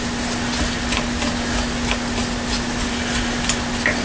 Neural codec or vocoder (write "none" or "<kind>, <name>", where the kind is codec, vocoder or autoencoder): none